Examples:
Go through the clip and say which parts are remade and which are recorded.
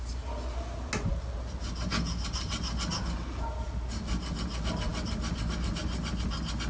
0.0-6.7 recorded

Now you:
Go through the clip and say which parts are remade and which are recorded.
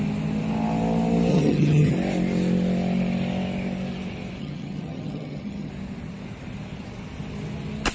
0.0-1.3 recorded; 1.3-1.9 remade; 1.9-4.4 recorded; 4.4-5.7 remade; 5.7-7.9 recorded